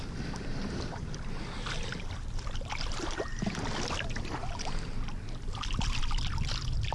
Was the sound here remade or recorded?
recorded